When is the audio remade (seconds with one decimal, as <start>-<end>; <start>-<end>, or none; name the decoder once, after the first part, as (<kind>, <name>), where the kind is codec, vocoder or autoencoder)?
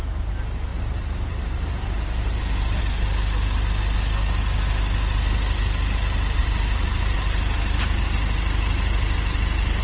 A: 0.7-2.8 (vocoder, BigVGAN v2); 6.4-7.0